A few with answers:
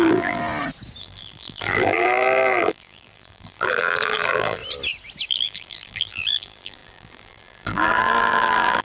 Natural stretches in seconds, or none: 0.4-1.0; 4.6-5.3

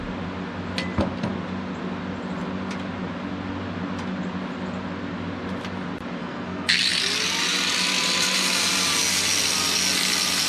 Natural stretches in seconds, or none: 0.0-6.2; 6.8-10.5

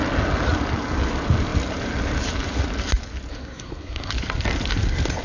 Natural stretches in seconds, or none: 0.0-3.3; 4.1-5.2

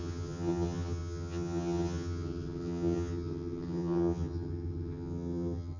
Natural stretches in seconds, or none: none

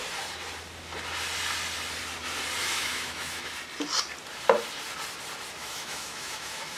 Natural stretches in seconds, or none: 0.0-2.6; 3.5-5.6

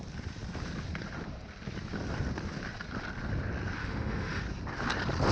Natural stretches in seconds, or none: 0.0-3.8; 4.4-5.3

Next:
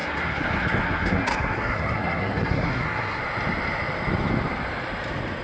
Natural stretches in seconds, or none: 3.2-5.4